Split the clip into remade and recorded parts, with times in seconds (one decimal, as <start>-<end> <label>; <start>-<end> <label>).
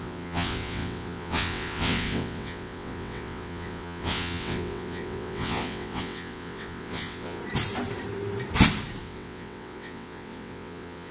0.0-7.4 remade; 7.4-9.0 recorded; 9.0-11.1 remade